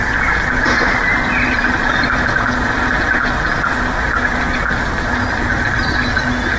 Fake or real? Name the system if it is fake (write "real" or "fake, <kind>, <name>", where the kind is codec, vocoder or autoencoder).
real